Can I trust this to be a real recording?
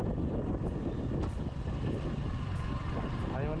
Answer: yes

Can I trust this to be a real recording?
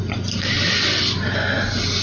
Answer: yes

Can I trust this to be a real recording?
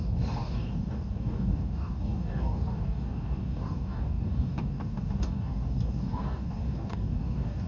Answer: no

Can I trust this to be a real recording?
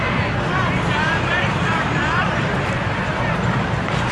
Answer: no